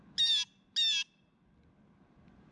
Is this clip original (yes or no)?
yes